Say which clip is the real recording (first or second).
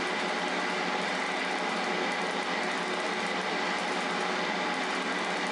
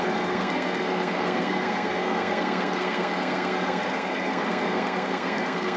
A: first